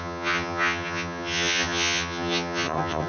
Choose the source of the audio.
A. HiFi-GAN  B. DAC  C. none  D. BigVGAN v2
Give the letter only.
A